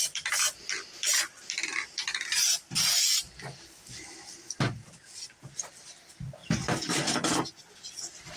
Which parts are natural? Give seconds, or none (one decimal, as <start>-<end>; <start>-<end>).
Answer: 1.7-2.7; 4.8-5.7